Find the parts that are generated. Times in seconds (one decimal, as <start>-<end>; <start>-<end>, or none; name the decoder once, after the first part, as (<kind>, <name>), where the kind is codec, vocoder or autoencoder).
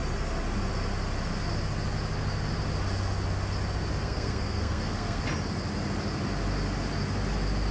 4.0-5.2 (codec, SNAC)